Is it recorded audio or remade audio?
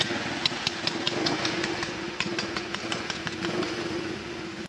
remade